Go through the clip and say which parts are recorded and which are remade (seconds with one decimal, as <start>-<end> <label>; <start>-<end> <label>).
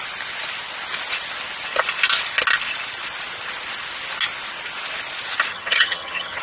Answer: 0.0-5.5 recorded; 5.5-6.4 remade